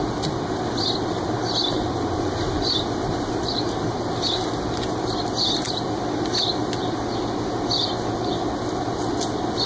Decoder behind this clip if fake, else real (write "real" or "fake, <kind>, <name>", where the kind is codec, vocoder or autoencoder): real